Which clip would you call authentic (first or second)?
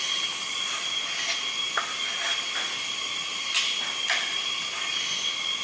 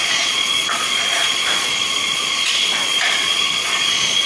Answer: first